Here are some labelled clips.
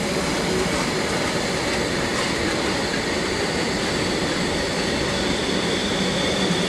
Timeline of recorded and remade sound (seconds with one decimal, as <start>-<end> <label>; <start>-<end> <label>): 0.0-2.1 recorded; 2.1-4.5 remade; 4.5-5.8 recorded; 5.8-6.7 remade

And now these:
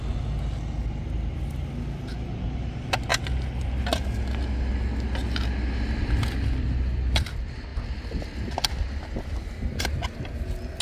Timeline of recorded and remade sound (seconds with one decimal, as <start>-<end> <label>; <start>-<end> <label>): 0.0-10.8 recorded

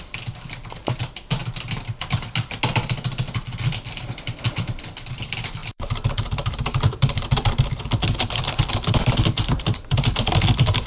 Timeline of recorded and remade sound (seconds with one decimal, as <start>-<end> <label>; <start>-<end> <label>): 0.0-5.6 recorded; 5.6-10.3 remade; 10.3-10.9 recorded

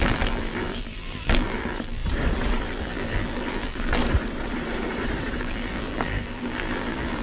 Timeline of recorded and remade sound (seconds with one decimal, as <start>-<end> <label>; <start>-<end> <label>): 0.0-2.0 remade; 2.0-2.6 recorded; 2.6-4.0 remade; 4.0-5.4 recorded; 5.4-7.2 remade

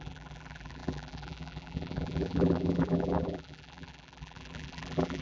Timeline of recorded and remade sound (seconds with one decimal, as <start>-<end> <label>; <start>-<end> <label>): 0.0-5.2 remade